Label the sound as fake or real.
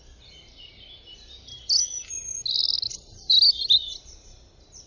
real